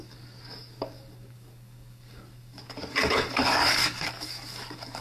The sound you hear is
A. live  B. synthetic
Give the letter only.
B